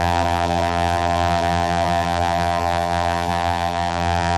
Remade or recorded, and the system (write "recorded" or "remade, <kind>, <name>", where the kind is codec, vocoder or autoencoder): remade, vocoder, BigVGAN v2